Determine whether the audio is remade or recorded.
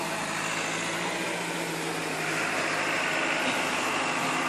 remade